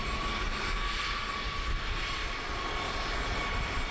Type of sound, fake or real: real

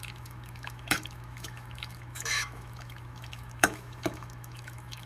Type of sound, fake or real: fake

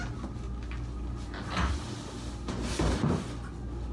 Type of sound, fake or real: real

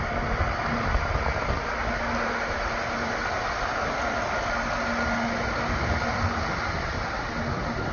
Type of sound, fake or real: real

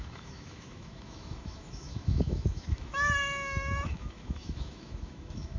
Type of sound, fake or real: fake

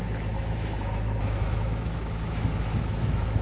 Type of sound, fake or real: fake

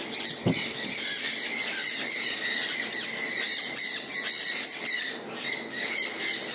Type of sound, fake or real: real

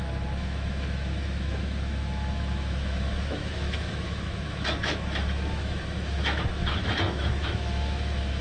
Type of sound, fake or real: fake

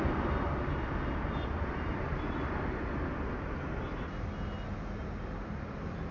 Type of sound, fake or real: real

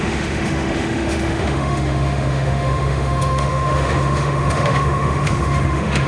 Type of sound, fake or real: fake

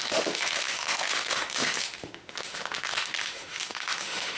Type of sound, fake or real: fake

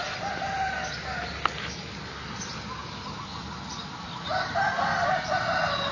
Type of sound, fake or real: real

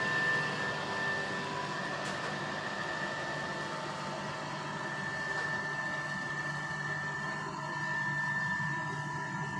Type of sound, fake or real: real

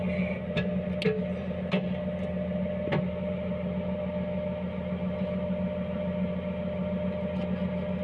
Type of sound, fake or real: real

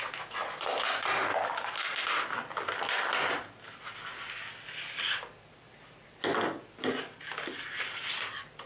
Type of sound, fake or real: real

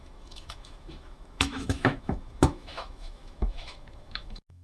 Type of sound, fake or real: fake